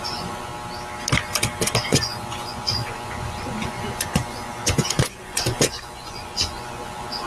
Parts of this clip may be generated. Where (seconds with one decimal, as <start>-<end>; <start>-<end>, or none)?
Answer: 0.0-0.5; 1.8-7.3